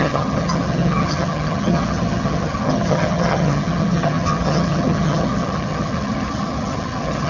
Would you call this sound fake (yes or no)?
yes